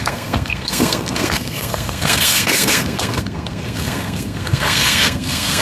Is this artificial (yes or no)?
yes